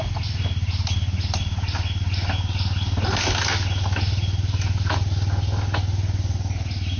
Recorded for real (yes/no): yes